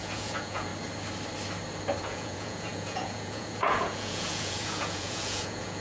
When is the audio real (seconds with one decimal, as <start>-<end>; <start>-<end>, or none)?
0.7-2.0